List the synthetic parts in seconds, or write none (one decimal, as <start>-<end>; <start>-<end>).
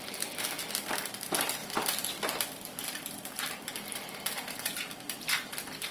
none